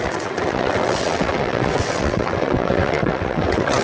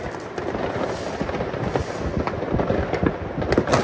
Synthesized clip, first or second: first